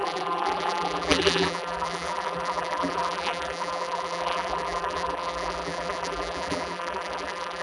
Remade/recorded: remade